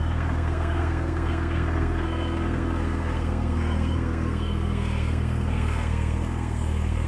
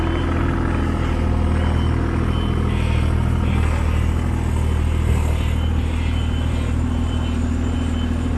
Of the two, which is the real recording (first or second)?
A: second